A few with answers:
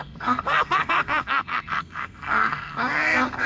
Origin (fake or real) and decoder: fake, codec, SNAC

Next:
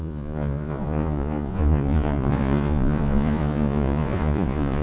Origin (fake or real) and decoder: fake, vocoder, Vocos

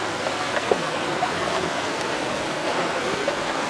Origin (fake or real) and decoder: fake, codec, SNAC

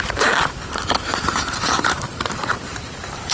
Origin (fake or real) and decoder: fake, vocoder, BigVGAN v2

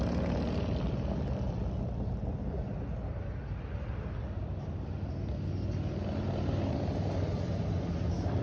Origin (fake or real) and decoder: real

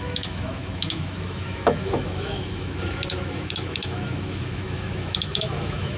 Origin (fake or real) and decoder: fake, autoencoder, DAC-VAE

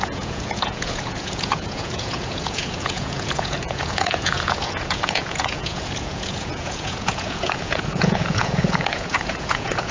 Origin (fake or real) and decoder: fake, vocoder, Vocos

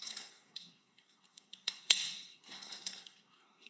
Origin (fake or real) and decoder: fake, codec, SNAC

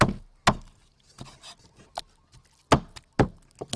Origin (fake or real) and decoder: real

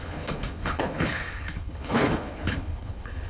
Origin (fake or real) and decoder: fake, codec, HILCodec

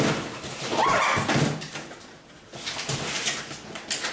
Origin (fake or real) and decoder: real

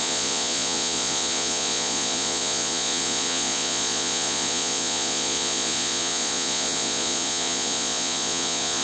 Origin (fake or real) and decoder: fake, vocoder, Vocos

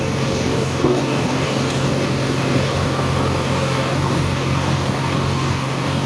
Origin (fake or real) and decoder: fake, codec, DAC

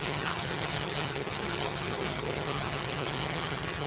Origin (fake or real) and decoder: fake, vocoder, HiFi-GAN